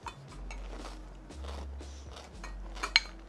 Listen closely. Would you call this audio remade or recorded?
recorded